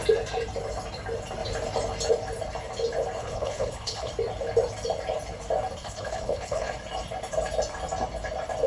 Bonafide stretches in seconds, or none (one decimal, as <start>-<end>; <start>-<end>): 0.0-3.2; 4.1-5.8; 6.7-8.7